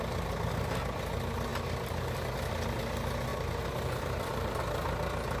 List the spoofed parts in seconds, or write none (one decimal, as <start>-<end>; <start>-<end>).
3.3-4.6

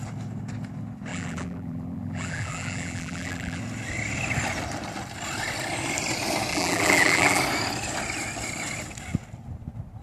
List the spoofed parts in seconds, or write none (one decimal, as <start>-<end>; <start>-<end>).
1.1-3.6; 6.5-7.4

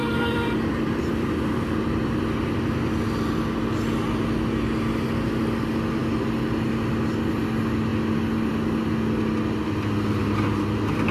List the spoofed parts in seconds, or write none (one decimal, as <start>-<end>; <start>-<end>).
0.0-3.0

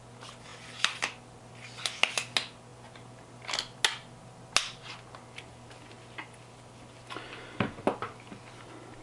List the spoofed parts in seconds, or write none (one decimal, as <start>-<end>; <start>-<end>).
none

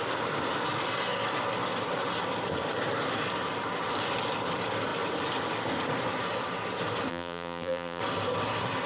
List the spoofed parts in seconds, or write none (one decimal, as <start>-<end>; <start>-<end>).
7.1-8.0

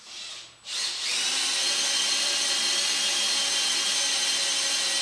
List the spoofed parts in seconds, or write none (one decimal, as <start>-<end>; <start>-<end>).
1.1-4.1

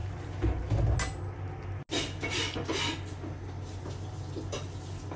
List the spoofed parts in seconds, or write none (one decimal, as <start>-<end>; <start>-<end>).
none